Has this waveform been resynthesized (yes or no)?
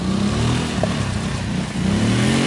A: no